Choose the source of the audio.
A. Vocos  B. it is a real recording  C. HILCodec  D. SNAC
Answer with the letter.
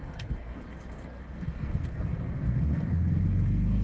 D